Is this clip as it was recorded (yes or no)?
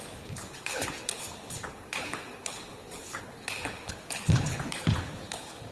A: no